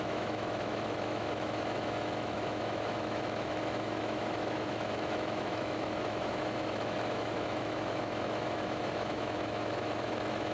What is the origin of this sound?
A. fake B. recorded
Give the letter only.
A